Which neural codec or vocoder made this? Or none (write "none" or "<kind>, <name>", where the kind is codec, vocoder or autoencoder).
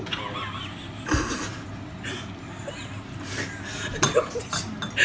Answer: none